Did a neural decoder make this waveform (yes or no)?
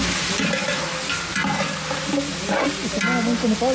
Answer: no